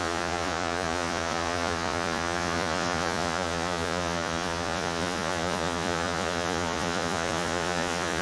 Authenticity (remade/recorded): remade